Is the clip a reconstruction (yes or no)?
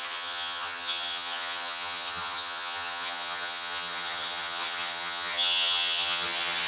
yes